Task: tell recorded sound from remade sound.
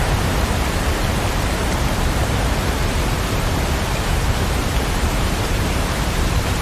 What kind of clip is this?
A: remade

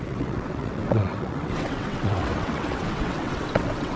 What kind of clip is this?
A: remade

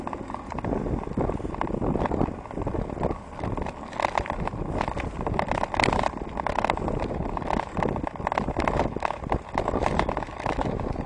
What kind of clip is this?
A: recorded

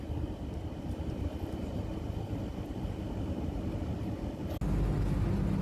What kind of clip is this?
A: recorded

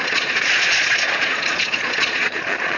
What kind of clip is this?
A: remade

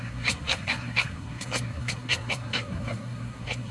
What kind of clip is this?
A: remade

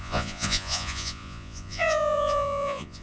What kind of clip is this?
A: remade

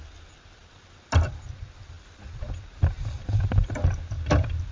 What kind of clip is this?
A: recorded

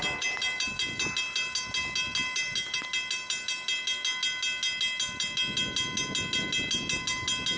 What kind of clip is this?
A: recorded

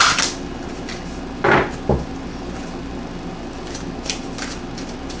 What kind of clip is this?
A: recorded